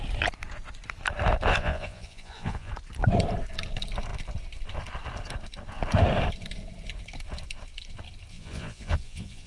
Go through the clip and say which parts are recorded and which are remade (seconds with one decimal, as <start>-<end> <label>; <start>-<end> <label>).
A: 0.0-1.5 recorded; 1.5-2.7 remade; 2.7-8.3 recorded; 8.3-9.5 remade